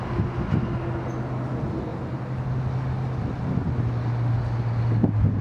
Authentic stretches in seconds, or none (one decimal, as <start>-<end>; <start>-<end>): 0.0-5.4